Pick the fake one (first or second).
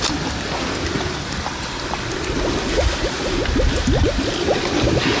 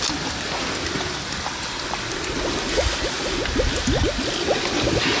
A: first